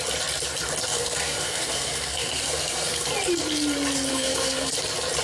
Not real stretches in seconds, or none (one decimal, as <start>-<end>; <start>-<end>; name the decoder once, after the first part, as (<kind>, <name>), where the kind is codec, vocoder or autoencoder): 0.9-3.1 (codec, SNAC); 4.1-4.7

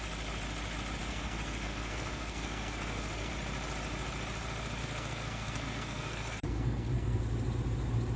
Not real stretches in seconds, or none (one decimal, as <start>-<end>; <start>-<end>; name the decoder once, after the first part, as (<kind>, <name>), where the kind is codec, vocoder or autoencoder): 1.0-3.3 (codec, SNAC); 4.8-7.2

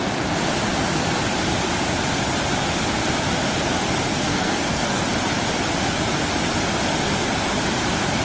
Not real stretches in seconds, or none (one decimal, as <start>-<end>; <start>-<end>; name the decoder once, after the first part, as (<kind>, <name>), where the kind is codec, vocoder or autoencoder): 4.1-5.0 (codec, SNAC)